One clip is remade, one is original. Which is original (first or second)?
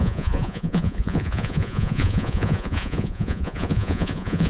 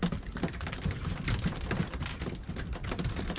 second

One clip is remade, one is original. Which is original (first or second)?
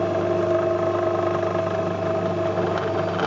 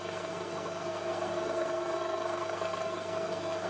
first